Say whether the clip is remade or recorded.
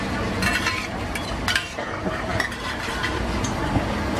recorded